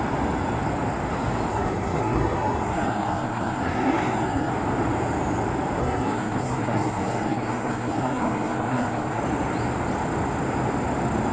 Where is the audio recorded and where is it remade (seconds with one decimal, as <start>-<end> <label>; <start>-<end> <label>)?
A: 0.0-1.5 recorded; 1.5-4.5 remade; 4.5-5.8 recorded; 5.8-9.2 remade; 9.2-11.3 recorded